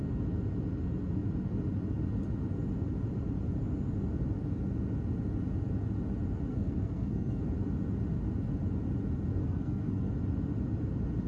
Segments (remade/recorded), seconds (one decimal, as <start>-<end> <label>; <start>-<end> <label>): 0.0-6.5 recorded; 6.5-7.4 remade; 7.4-9.4 recorded; 9.4-10.1 remade; 10.1-11.3 recorded